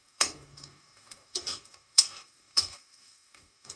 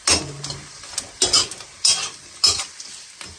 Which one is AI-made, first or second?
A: first